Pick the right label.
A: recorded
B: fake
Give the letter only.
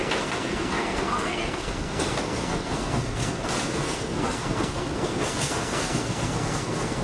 B